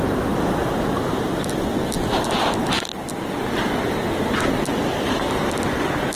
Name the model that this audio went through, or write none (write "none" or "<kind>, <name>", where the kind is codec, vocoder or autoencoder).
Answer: none